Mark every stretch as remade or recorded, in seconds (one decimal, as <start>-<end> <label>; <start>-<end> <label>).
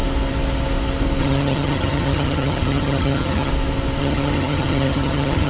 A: 0.0-1.2 recorded; 1.2-3.5 remade; 3.5-4.0 recorded; 4.0-5.5 remade